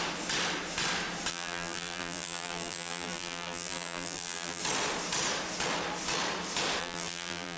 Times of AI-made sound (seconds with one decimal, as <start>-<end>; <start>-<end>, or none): 1.3-4.6; 6.8-7.6